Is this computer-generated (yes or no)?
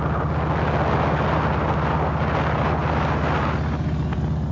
no